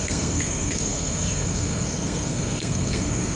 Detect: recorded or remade remade